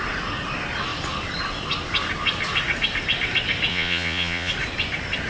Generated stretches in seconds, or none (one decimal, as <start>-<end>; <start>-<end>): 3.7-4.5